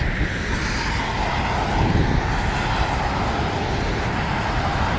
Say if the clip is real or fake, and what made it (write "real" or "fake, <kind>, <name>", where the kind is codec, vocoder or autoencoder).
real